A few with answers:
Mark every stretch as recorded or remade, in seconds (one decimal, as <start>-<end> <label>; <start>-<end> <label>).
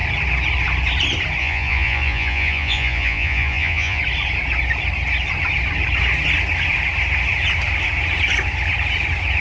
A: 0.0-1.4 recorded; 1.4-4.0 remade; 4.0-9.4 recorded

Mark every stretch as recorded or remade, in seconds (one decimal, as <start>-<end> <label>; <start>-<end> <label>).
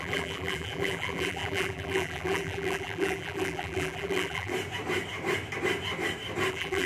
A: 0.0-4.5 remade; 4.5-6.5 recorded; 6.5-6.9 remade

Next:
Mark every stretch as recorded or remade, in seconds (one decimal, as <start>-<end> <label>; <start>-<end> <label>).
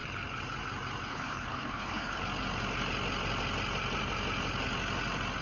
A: 0.0-1.1 recorded; 1.1-2.2 remade; 2.2-5.4 recorded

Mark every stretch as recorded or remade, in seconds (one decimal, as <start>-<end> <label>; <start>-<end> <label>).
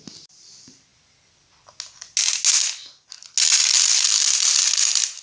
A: 0.0-0.9 remade; 0.9-3.7 recorded; 3.7-5.2 remade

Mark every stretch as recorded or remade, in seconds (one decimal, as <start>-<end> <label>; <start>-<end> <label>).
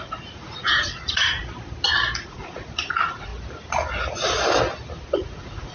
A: 0.0-1.4 remade; 1.4-2.2 recorded; 2.2-3.3 remade; 3.3-5.1 recorded; 5.1-5.7 remade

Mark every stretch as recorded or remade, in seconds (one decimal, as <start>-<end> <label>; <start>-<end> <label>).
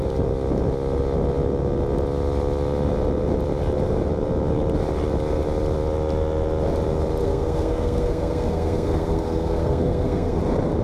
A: 0.0-7.2 recorded; 7.2-10.4 remade; 10.4-10.8 recorded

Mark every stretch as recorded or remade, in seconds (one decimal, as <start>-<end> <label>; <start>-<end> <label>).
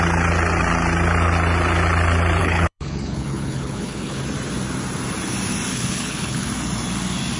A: 0.0-2.4 recorded; 2.4-4.2 remade; 4.2-5.7 recorded; 5.7-6.5 remade; 6.5-7.4 recorded